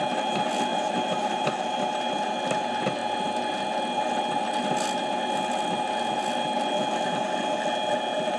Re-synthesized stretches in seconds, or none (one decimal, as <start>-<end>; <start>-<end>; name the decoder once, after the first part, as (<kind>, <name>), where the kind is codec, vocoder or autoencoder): 0.7-1.9 (vocoder, BigVGAN v2)